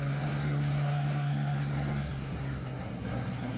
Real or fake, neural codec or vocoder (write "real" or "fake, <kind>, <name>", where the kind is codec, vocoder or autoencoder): fake, codec, SNAC